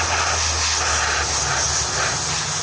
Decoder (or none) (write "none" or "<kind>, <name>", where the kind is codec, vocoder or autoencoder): none